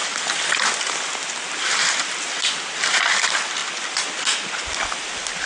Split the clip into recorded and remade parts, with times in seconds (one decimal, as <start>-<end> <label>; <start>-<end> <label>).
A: 0.0-5.5 recorded